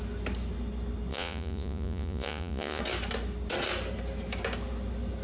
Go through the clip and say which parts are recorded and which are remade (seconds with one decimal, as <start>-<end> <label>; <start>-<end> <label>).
0.0-1.1 recorded; 1.1-2.8 remade; 2.8-5.2 recorded